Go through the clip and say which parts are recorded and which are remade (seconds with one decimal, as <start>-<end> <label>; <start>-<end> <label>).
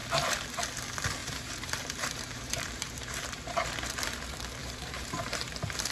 0.0-1.2 recorded; 1.2-3.8 remade; 3.8-4.6 recorded; 4.6-5.4 remade; 5.4-5.9 recorded